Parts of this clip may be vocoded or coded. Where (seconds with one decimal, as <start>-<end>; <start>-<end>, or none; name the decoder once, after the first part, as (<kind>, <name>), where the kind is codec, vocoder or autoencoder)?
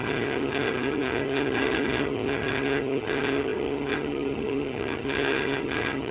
0.0-6.1 (vocoder, HiFi-GAN)